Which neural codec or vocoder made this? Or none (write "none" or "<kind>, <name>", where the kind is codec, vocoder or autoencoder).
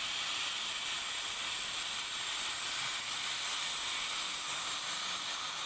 none